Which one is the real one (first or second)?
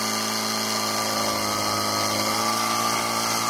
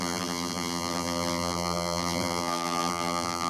first